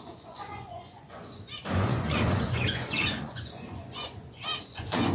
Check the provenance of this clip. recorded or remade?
remade